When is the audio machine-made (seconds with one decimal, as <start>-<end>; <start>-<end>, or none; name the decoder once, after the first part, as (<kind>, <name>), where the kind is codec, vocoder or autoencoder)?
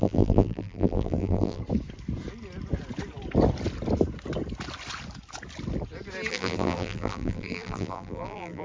0.0-1.6 (vocoder, BigVGAN v2); 6.3-8.6